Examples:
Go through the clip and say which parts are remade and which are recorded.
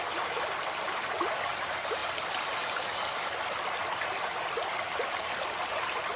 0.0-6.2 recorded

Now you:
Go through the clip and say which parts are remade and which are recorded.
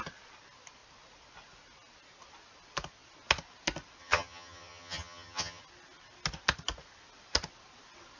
0.0-4.0 recorded; 4.0-5.6 remade; 5.6-8.2 recorded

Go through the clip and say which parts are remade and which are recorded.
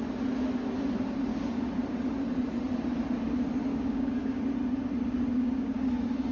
0.0-3.7 recorded; 3.7-4.4 remade; 4.4-5.3 recorded; 5.3-5.8 remade; 5.8-6.3 recorded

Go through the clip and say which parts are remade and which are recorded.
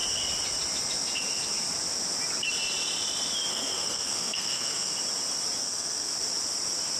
0.0-3.5 recorded; 3.5-4.9 remade; 4.9-5.6 recorded; 5.6-6.1 remade; 6.1-7.0 recorded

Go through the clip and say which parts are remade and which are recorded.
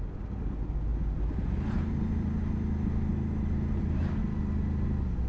0.0-5.3 recorded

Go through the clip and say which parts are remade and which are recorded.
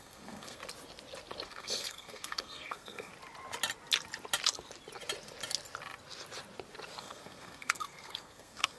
0.0-0.6 remade; 0.6-1.5 recorded; 1.5-3.1 remade; 3.1-7.0 recorded; 7.0-8.8 remade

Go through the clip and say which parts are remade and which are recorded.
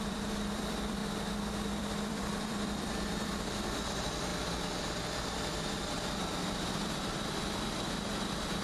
0.0-1.0 remade; 1.0-1.7 recorded; 1.7-4.3 remade; 4.3-6.9 recorded; 6.9-8.6 remade